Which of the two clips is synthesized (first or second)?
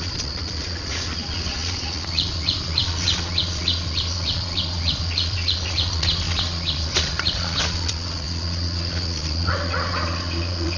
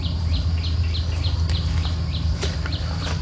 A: first